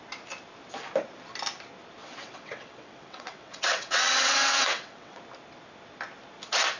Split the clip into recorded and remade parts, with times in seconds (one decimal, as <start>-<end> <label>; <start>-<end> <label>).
0.0-2.0 recorded; 2.0-5.2 remade; 5.2-6.8 recorded

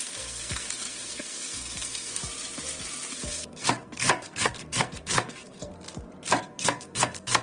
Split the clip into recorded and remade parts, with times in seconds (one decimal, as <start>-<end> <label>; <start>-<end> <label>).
0.0-2.2 remade; 2.2-3.1 recorded; 3.1-5.7 remade; 5.7-6.4 recorded; 6.4-7.4 remade

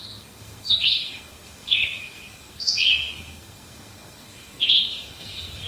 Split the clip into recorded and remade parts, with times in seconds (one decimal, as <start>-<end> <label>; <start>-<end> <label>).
0.0-5.7 remade

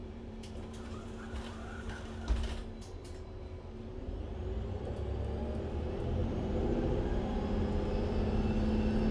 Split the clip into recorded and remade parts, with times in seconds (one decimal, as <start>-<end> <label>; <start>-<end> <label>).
0.0-1.9 remade; 1.9-3.0 recorded; 3.0-4.2 remade; 4.2-6.2 recorded; 6.2-7.0 remade; 7.0-9.1 recorded

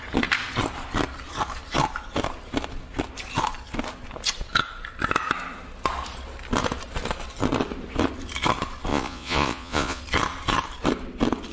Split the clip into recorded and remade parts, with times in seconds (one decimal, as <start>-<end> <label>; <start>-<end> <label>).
0.0-8.9 recorded; 8.9-10.0 remade; 10.0-11.5 recorded

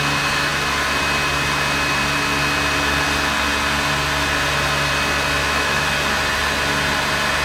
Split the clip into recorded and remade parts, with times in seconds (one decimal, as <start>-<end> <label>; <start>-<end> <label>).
0.0-5.4 recorded; 5.4-5.9 remade; 5.9-7.4 recorded